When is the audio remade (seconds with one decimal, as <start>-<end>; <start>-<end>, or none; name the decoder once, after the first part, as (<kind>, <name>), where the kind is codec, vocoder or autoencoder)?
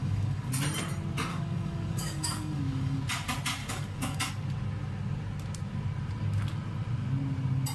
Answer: 0.0-0.5 (codec, DAC); 1.3-3.0; 3.6-4.3